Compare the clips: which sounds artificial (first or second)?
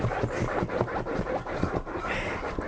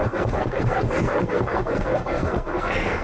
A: second